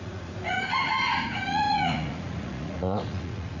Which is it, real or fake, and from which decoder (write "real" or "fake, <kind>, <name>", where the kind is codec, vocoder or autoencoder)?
fake, vocoder, Vocos